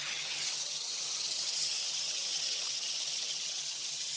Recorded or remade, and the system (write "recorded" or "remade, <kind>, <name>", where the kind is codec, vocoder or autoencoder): remade, vocoder, HiFi-GAN